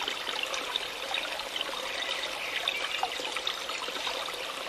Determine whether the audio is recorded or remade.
recorded